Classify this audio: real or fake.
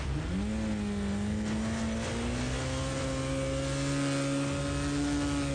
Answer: real